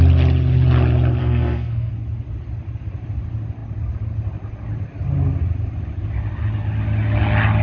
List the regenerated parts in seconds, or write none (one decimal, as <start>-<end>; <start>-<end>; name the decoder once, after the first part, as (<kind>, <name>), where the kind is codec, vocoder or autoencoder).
1.2-1.9 (codec, SNAC)